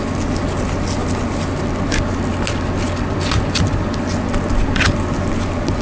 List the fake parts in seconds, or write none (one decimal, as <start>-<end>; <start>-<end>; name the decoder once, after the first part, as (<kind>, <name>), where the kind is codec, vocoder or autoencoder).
none

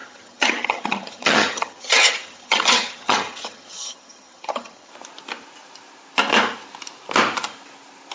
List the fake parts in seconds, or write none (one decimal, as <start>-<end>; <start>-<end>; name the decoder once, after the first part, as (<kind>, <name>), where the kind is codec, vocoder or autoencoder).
0.0-4.9 (vocoder, HiFi-GAN)

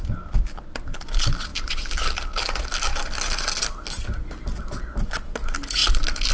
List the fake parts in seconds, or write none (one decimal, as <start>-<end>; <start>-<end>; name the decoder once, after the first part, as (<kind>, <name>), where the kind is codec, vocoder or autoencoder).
none

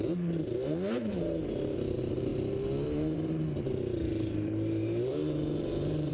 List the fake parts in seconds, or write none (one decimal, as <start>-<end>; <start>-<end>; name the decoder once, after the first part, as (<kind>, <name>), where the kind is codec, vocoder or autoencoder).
0.0-6.1 (vocoder, BigVGAN v2)

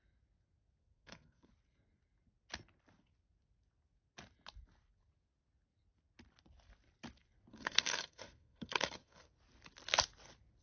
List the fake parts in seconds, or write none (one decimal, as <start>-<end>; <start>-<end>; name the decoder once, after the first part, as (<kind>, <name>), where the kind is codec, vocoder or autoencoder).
0.8-1.5 (codec, SNAC); 7.5-9.3

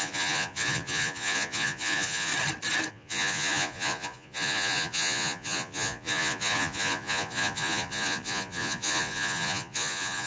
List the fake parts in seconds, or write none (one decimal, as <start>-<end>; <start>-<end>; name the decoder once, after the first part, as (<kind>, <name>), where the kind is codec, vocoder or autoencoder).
0.0-2.3 (vocoder, Vocos); 2.9-10.3

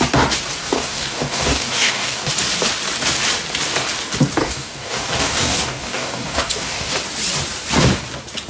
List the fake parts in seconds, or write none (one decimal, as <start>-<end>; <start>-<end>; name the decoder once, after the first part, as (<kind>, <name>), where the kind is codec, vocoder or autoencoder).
0.6-2.3 (codec, DAC); 4.4-6.9